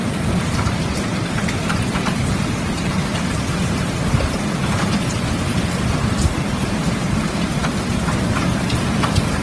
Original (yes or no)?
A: yes